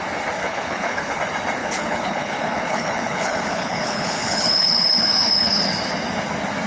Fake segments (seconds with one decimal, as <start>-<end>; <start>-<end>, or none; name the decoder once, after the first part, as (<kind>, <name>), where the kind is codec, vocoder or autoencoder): 0.4-1.2 (codec, HILCodec); 1.6-5.6